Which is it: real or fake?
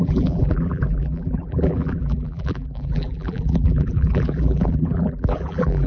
fake